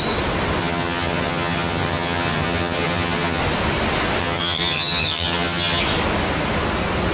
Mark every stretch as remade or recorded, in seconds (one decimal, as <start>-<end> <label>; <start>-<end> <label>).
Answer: 0.0-0.6 recorded; 0.6-3.4 remade; 3.4-4.2 recorded; 4.2-5.8 remade; 5.8-7.1 recorded